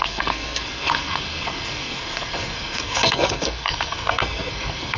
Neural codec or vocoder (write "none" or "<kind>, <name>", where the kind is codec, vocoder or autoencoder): codec, SNAC